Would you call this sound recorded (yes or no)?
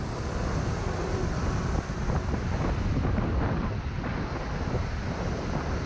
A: yes